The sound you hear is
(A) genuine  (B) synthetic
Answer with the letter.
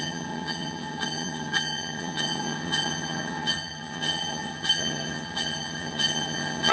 B